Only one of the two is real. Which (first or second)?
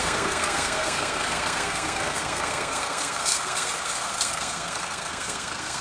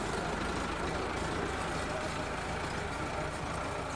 second